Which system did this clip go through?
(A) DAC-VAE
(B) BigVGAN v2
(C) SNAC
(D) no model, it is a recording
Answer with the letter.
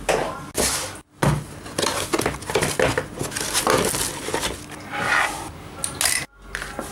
D